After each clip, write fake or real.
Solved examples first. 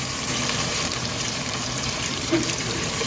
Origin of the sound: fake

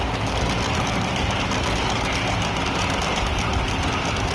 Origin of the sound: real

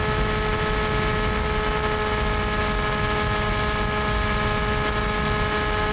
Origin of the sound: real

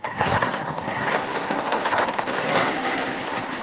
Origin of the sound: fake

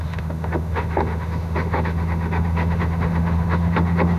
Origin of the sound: fake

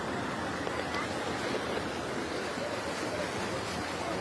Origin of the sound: real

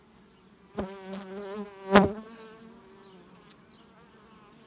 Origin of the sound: real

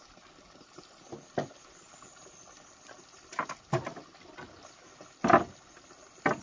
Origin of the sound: real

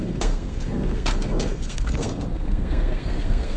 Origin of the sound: fake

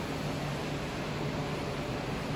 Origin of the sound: real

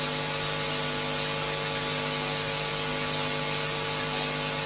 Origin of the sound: real